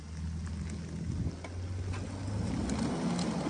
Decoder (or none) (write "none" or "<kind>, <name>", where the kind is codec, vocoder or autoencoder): none